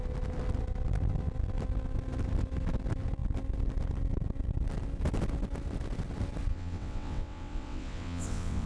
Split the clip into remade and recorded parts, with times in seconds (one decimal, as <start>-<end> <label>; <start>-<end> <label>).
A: 0.0-6.5 recorded; 6.5-8.7 remade